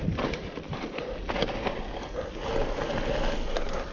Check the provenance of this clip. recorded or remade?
recorded